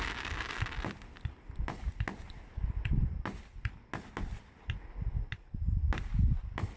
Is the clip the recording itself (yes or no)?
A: yes